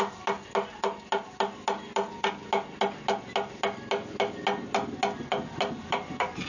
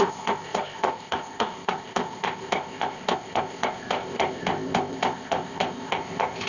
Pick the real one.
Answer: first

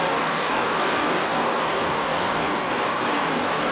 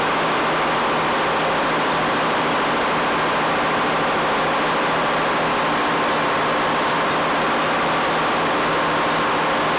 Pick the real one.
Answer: second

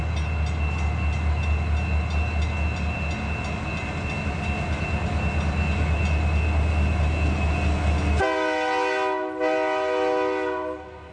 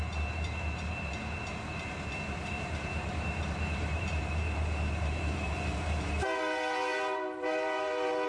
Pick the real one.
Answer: first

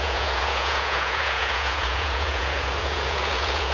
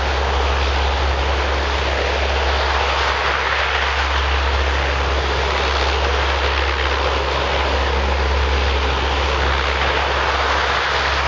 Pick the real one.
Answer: second